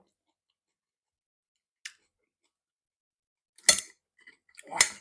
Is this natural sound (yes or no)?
yes